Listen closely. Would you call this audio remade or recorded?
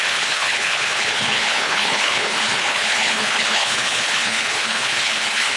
remade